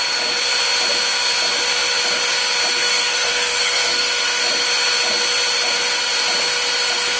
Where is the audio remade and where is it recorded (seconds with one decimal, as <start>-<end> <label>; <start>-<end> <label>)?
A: 0.0-2.8 recorded; 2.8-4.4 remade; 4.4-7.2 recorded